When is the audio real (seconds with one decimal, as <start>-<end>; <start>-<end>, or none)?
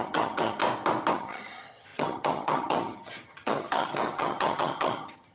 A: 0.6-1.1